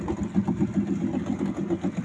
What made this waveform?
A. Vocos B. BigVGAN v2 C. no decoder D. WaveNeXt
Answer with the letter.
C